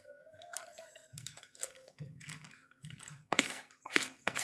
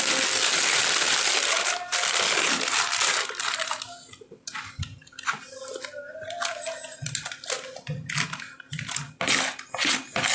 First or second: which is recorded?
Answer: second